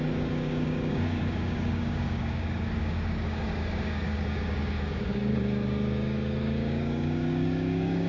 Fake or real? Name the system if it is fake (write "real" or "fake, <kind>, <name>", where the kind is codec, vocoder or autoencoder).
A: fake, codec, DAC